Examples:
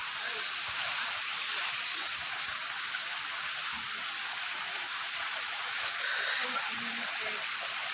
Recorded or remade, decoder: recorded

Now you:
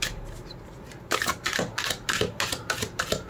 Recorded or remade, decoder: recorded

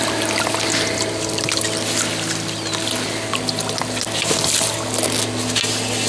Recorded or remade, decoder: recorded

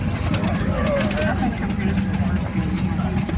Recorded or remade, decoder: recorded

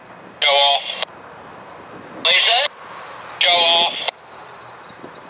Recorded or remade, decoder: recorded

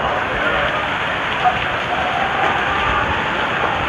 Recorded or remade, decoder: recorded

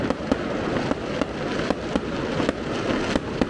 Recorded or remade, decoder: recorded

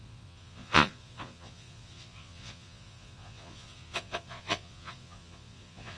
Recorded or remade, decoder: remade, vocoder, Vocos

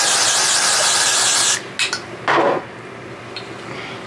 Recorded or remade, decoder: recorded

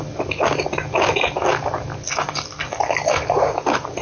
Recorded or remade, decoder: recorded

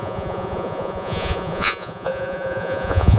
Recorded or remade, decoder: remade, vocoder, Vocos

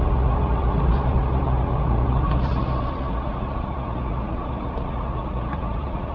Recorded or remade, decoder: remade, vocoder, Vocos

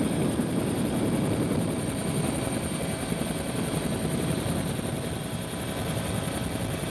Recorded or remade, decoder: recorded